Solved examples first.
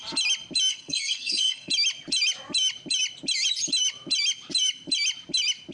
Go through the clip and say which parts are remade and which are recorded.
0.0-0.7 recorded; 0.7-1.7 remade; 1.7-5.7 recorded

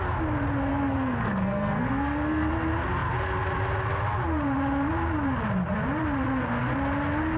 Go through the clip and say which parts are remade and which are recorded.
0.0-0.7 recorded; 0.7-2.5 remade; 2.5-7.4 recorded

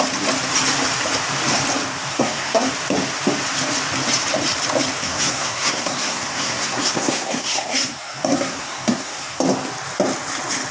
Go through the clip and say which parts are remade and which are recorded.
0.0-2.1 recorded; 2.1-2.7 remade; 2.7-5.0 recorded; 5.0-9.4 remade; 9.4-10.7 recorded

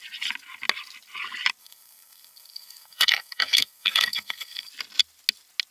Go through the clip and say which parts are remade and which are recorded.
0.0-1.6 recorded; 1.6-4.7 remade; 4.7-5.7 recorded

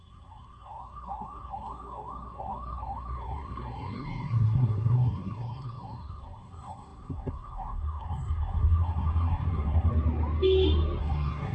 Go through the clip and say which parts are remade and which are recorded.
0.0-9.9 remade; 9.9-11.0 recorded; 11.0-11.5 remade

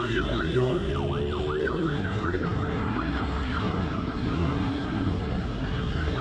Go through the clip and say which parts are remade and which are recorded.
0.0-0.9 remade; 0.9-1.6 recorded; 1.6-6.2 remade